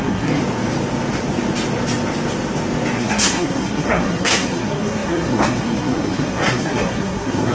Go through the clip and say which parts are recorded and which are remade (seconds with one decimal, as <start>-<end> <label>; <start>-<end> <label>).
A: 0.0-0.4 remade; 0.4-3.0 recorded; 3.0-7.5 remade